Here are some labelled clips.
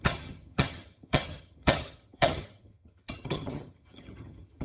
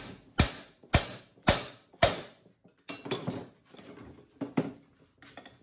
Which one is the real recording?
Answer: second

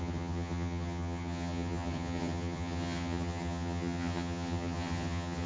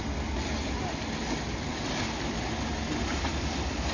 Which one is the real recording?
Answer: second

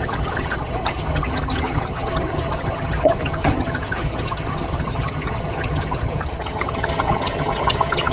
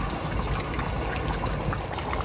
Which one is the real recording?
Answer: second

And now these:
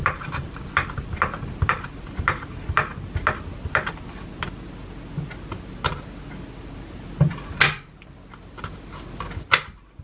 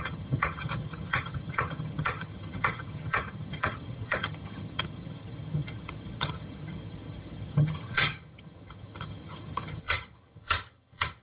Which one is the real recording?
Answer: first